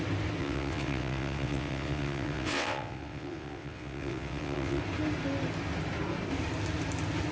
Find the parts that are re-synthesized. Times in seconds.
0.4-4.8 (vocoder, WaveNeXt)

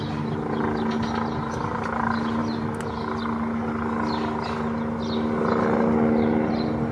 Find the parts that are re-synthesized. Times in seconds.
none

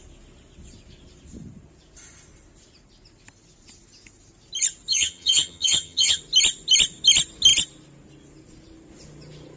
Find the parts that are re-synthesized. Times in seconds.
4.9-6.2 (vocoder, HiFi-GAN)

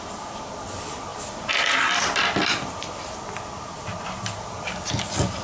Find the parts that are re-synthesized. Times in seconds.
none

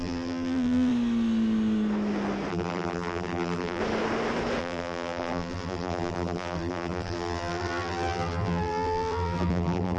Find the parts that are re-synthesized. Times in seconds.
0.0-0.9 (vocoder, BigVGAN v2); 2.5-3.8; 4.6-10.0

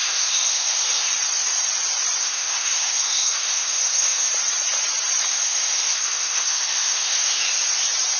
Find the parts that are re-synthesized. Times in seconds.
0.0-1.1 (codec, SNAC); 2.2-4.3; 5.4-7.5